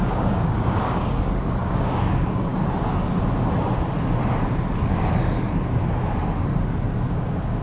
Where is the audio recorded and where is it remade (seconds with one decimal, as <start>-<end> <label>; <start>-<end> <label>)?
0.0-2.5 remade; 2.5-7.1 recorded; 7.1-7.6 remade